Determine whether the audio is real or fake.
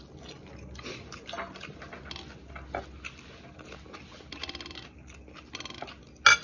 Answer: real